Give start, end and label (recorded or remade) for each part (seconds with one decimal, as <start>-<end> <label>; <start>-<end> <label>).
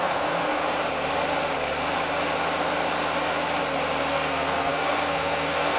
0.0-0.6 remade; 0.6-4.1 recorded; 4.1-5.8 remade